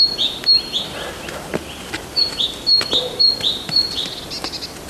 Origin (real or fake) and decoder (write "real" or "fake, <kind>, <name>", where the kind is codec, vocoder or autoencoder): real